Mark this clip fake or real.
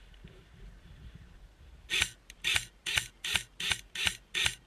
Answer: real